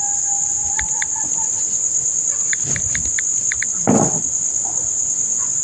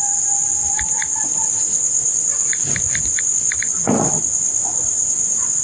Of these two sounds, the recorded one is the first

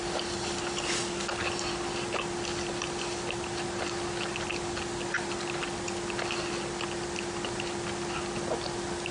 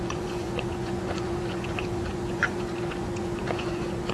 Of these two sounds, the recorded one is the first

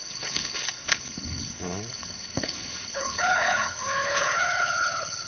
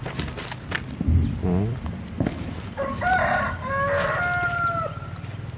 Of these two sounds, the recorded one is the second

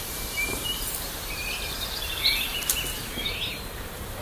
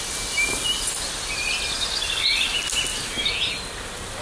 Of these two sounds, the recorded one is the second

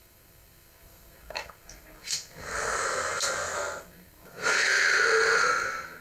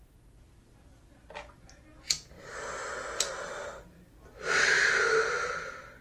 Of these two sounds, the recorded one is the second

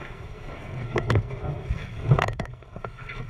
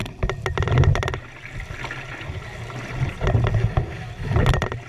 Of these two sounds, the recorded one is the second